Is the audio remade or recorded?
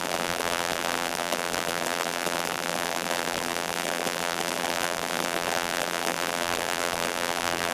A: remade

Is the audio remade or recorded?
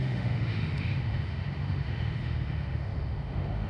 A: remade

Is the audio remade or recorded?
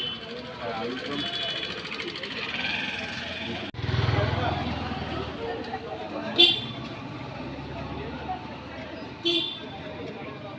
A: recorded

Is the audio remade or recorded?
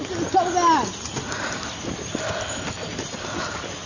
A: recorded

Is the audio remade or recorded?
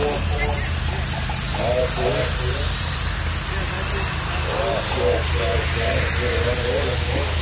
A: recorded